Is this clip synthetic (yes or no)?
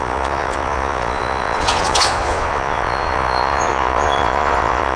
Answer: yes